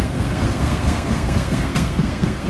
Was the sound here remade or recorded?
remade